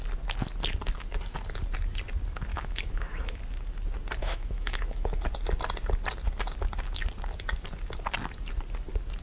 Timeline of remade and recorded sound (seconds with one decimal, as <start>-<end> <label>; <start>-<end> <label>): 0.0-2.5 recorded; 2.5-3.4 remade; 3.4-4.2 recorded; 4.2-5.2 remade; 5.2-9.2 recorded